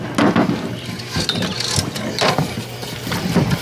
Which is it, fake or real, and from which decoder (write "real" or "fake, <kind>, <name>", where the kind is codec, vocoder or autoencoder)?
real